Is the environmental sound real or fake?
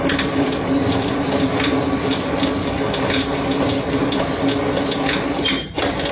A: real